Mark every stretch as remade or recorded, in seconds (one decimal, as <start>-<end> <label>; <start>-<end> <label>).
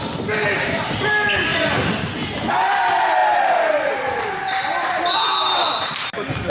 0.0-5.6 recorded; 5.6-6.5 remade